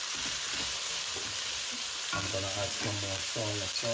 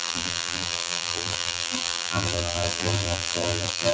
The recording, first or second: first